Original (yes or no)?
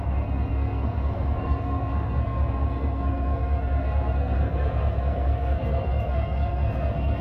no